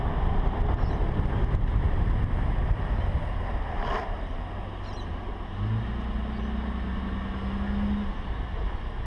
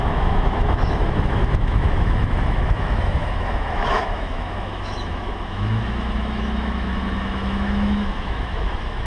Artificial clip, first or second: second